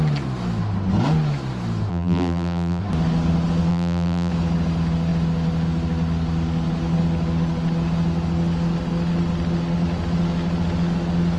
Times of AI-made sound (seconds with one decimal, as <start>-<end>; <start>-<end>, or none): 1.9-2.8; 3.7-4.3